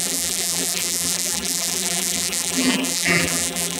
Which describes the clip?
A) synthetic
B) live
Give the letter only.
A